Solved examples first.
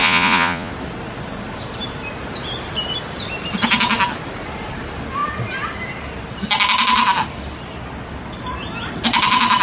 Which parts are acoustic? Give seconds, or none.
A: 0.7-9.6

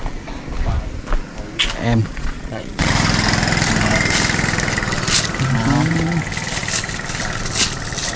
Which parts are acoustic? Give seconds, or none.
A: 0.0-2.0; 2.9-8.2

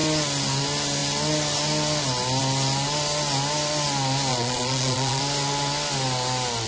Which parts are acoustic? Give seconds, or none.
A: 0.0-4.3; 5.2-6.7

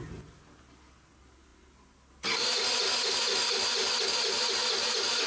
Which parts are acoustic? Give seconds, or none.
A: 0.0-5.3

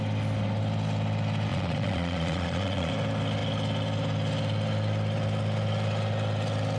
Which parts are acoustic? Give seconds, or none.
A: 0.0-1.5; 2.9-6.8